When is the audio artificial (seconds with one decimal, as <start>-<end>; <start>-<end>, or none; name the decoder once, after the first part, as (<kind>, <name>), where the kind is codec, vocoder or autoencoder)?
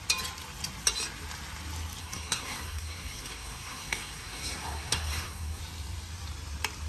2.0-5.6 (codec, SNAC)